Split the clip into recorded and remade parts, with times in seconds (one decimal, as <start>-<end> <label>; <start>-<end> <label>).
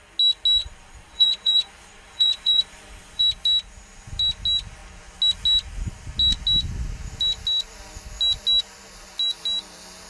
0.0-0.6 recorded; 0.6-3.2 remade; 3.2-10.1 recorded